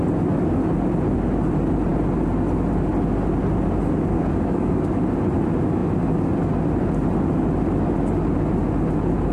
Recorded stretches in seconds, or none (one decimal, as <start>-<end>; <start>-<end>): 0.0-4.1; 5.0-9.3